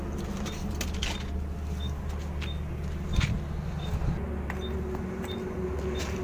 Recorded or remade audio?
recorded